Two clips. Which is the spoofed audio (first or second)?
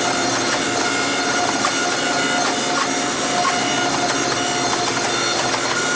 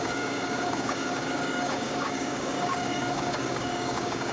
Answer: second